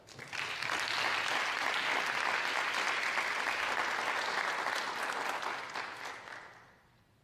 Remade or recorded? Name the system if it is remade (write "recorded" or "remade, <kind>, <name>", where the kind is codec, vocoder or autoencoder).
recorded